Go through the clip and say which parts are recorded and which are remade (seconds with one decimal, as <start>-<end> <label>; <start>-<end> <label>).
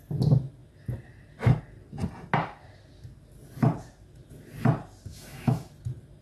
0.0-5.1 recorded; 5.1-5.7 remade; 5.7-6.2 recorded